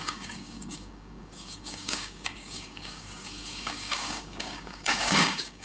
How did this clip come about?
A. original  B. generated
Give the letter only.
B